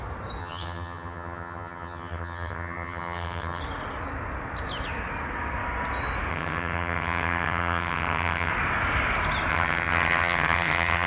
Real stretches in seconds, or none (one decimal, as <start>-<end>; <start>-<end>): 0.0-0.4; 3.6-6.3; 8.5-9.5